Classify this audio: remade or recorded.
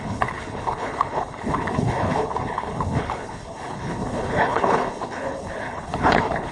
remade